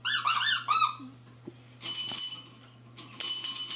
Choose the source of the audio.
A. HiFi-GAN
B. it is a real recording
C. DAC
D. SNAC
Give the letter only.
B